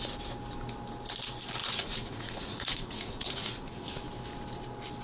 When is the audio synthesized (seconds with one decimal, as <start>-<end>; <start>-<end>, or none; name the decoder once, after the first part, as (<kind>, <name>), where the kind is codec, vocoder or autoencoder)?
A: 1.6-4.0 (vocoder, Vocos)